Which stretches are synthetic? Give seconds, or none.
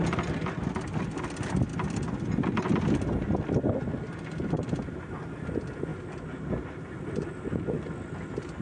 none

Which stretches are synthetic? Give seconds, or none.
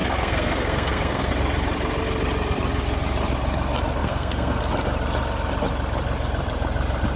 0.0-1.3; 4.0-4.6